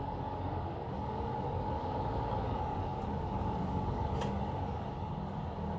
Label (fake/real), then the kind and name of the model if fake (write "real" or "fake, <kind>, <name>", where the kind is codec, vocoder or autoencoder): fake, codec, DAC